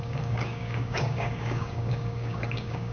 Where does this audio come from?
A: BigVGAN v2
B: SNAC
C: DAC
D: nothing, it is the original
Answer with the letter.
C